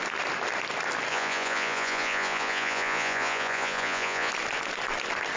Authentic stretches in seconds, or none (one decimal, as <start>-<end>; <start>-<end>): 0.0-1.1; 4.3-5.4